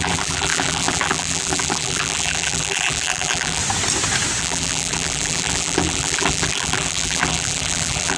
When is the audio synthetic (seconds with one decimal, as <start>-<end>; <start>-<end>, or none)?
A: 0.0-3.6; 4.4-8.2